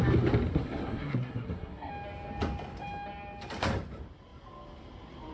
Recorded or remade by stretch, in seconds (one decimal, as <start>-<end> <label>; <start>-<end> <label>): 0.0-0.5 recorded; 0.5-1.9 remade; 1.9-5.3 recorded